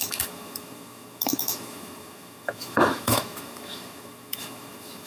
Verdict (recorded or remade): remade